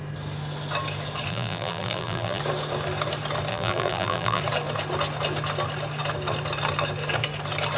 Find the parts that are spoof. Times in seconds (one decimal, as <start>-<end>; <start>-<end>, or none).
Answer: 1.3-2.4; 3.5-4.4

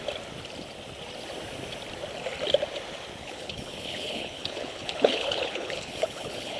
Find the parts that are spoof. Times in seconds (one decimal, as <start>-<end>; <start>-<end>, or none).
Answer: 3.2-6.6

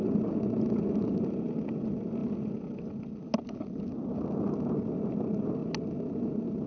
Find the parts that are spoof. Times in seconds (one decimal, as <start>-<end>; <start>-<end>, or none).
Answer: none

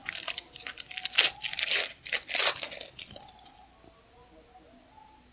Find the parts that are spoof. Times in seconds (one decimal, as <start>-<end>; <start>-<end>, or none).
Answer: none

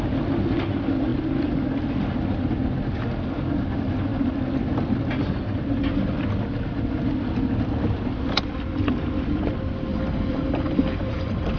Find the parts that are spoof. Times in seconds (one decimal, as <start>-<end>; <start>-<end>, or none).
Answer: 9.9-11.6

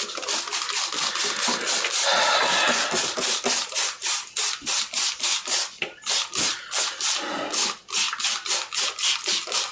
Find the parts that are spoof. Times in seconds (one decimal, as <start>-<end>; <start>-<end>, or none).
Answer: none

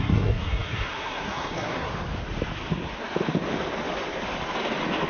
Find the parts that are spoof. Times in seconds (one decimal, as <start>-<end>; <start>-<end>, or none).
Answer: 0.0-1.9